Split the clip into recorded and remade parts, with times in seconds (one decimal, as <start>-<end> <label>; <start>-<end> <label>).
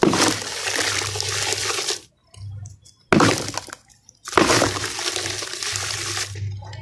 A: 0.0-6.8 recorded